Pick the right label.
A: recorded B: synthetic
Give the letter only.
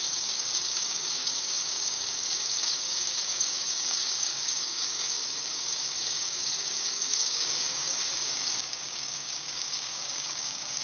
B